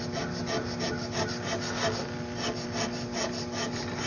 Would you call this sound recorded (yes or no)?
yes